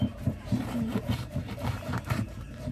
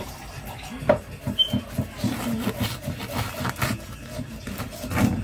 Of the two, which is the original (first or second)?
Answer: second